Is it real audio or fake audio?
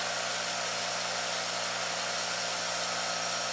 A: real